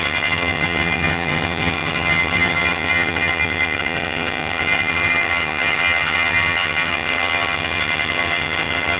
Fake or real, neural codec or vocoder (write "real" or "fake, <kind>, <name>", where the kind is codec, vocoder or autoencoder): fake, vocoder, HiFi-GAN